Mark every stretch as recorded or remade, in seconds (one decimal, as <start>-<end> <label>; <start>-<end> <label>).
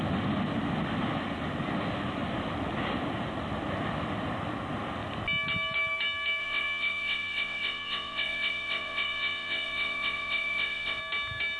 0.0-6.4 recorded; 6.4-11.0 remade; 11.0-11.6 recorded